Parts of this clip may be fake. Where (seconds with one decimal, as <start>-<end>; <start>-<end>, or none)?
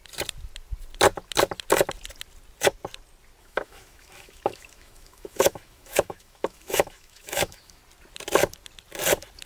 3.4-7.8